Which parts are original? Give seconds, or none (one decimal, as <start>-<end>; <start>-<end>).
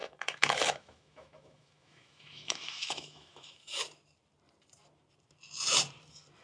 3.8-6.4